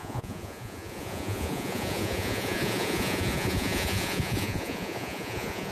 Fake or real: fake